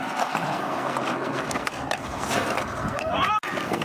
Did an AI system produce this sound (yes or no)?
yes